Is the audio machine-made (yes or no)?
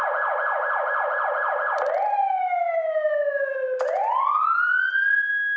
no